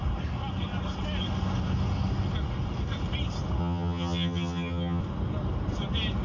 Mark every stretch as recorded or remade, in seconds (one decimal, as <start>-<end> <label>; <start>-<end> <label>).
0.0-3.6 recorded; 3.6-5.0 remade; 5.0-6.2 recorded